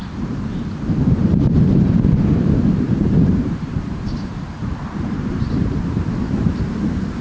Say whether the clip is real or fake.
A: fake